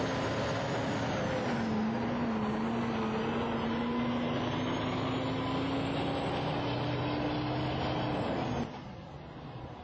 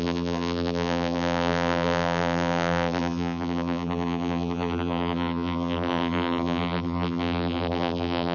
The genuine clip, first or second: first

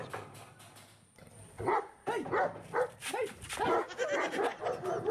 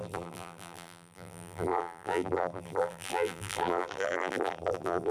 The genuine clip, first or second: first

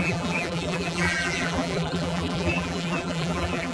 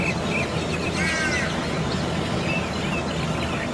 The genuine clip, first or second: second